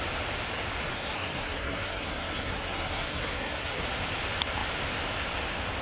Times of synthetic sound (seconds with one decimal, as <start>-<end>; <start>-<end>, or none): 0.9-3.8